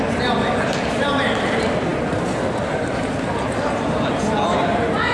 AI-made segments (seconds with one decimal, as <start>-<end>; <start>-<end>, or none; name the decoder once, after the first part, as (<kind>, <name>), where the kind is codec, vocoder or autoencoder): none